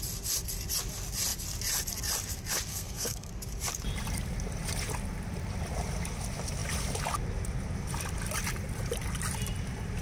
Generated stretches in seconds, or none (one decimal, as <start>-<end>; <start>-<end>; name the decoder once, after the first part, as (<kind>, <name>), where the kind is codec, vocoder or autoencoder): 2.7-3.3 (codec, SNAC)